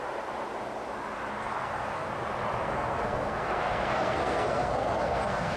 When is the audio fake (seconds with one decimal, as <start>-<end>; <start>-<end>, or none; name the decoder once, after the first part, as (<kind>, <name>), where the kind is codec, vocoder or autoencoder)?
1.3-2.1 (codec, SNAC); 2.6-5.6